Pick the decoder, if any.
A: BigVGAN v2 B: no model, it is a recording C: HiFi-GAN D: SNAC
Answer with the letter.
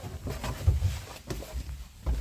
B